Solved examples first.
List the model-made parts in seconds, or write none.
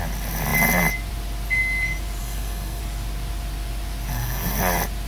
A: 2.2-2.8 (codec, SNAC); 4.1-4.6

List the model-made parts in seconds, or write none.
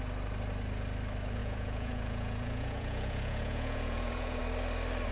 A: 1.4-4.4 (vocoder, Vocos)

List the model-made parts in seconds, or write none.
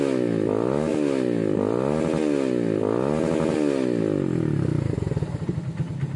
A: none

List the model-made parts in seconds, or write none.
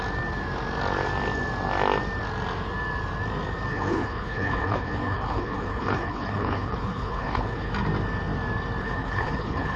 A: 3.7-7.7 (codec, HILCodec); 8.8-9.8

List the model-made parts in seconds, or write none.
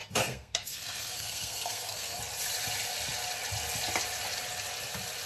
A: 0.0-2.2 (codec, SNAC)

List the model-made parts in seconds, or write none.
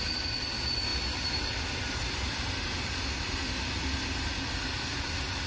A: none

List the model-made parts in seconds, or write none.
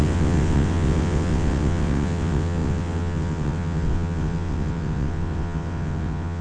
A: 0.0-6.4 (vocoder, WaveNeXt)